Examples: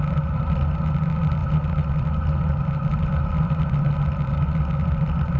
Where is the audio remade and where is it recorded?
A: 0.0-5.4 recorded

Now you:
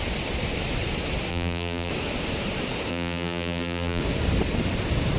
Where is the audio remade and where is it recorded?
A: 0.0-1.3 recorded; 1.3-1.9 remade; 1.9-2.9 recorded; 2.9-4.0 remade; 4.0-5.2 recorded

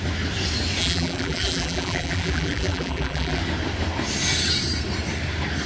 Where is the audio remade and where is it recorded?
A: 0.0-0.8 recorded; 0.8-3.4 remade; 3.4-5.7 recorded

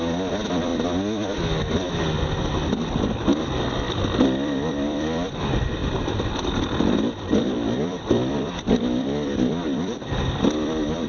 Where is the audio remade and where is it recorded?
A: 0.0-0.7 remade; 0.7-3.8 recorded; 3.8-11.1 remade

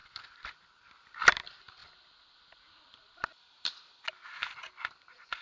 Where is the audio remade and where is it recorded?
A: 0.0-5.4 recorded

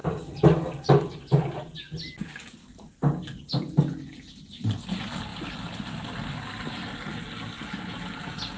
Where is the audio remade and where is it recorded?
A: 0.0-0.9 remade; 0.9-2.6 recorded; 2.6-3.8 remade; 3.8-5.3 recorded; 5.3-6.0 remade; 6.0-8.6 recorded

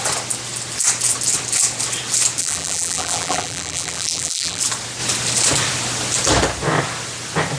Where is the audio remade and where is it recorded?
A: 0.0-2.4 recorded; 2.4-4.6 remade; 4.6-7.6 recorded

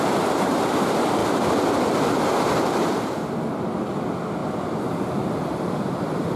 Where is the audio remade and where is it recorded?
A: 0.0-1.2 recorded; 1.2-2.9 remade; 2.9-4.4 recorded; 4.4-6.4 remade